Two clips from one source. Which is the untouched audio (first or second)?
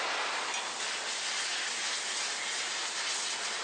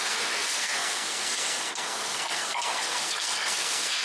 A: first